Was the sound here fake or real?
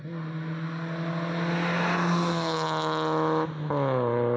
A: real